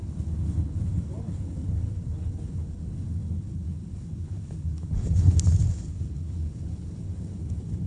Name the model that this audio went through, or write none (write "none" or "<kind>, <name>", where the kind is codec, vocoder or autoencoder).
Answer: codec, HILCodec